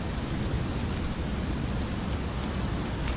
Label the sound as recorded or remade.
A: recorded